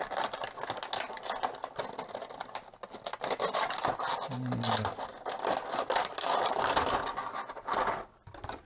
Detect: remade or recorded recorded